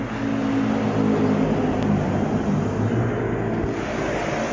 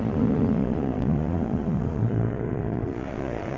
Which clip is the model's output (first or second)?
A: second